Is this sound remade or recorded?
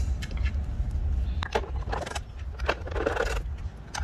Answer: recorded